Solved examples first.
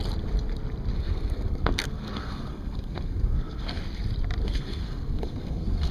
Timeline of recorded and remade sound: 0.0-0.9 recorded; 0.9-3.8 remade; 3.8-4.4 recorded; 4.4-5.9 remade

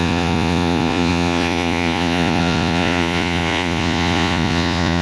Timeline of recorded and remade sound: 0.0-5.0 remade

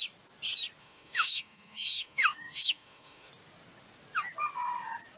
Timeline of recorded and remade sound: 0.0-0.8 recorded; 0.8-3.3 remade; 3.3-5.2 recorded

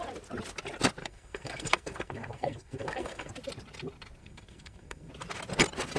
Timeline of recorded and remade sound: 0.0-1.0 recorded; 1.0-3.3 remade; 3.3-4.2 recorded; 4.2-5.1 remade; 5.1-6.0 recorded